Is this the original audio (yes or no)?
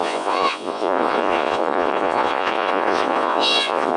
no